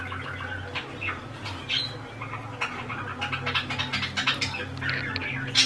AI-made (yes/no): no